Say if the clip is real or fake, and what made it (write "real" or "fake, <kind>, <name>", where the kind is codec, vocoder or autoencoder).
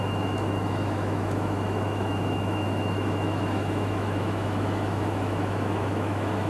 fake, autoencoder, DAC-VAE